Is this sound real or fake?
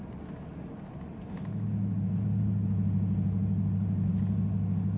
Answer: real